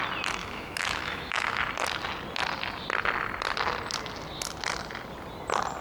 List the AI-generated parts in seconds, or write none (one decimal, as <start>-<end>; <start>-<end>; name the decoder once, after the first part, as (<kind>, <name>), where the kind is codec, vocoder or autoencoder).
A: 0.4-1.6 (autoencoder, DAC-VAE)